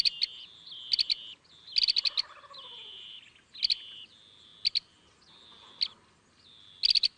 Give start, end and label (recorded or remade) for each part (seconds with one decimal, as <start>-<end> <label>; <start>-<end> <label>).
0.0-7.2 recorded